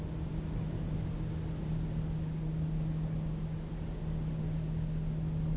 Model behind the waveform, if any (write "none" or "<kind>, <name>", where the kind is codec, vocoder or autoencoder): none